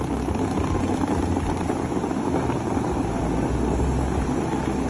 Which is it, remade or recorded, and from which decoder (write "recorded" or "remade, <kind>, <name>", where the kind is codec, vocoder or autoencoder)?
recorded